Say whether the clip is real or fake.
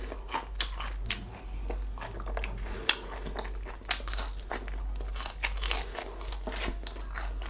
real